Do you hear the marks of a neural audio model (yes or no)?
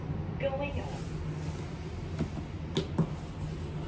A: no